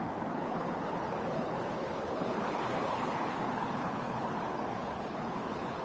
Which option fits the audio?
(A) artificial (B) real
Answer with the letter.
A